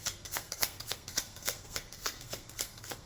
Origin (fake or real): fake